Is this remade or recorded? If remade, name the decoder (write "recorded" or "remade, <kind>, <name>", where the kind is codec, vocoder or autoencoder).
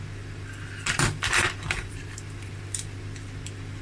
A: remade, vocoder, BigVGAN v2